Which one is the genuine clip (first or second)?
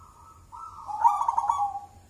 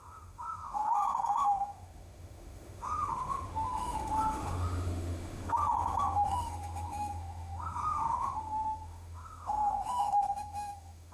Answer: first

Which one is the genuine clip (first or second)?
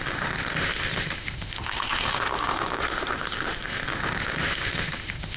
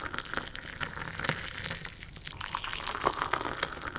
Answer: second